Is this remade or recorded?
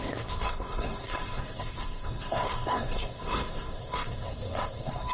remade